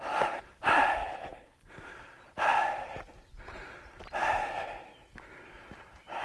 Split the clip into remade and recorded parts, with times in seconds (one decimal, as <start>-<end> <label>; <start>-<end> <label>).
0.0-1.0 recorded; 1.0-1.7 remade; 1.7-6.2 recorded